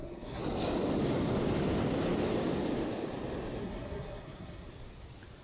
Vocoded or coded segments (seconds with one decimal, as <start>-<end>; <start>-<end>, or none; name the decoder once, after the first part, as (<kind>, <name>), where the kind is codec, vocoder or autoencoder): 0.0-0.4 (codec, SNAC); 3.6-4.7